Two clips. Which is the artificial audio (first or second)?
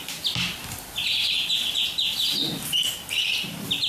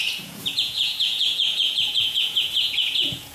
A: second